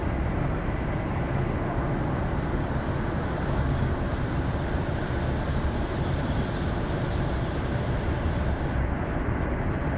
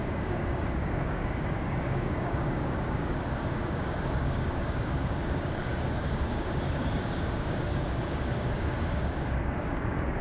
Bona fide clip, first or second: first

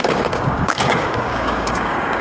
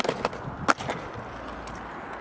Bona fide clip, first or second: second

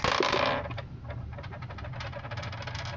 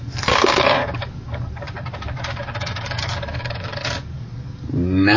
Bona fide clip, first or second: first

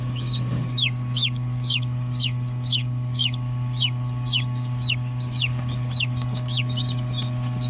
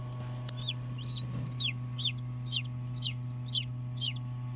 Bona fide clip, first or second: second